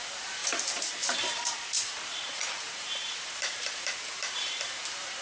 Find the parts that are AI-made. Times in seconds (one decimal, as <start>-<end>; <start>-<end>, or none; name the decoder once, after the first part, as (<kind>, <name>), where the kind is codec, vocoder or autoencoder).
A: 0.0-5.2 (vocoder, BigVGAN v2)